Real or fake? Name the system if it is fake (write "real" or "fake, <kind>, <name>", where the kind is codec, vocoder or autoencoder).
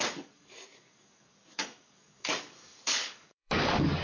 fake, codec, DAC